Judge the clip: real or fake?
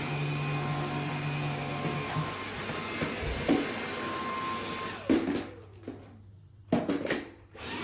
real